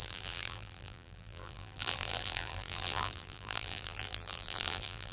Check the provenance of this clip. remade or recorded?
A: remade